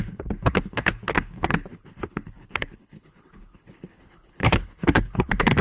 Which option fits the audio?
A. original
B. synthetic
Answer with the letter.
B